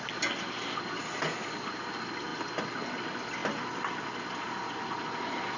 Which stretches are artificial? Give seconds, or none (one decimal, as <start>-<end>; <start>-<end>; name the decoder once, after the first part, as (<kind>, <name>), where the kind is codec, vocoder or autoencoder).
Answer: none